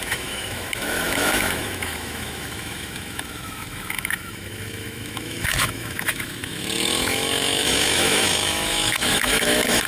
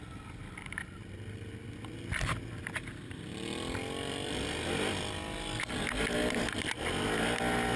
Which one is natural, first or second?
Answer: second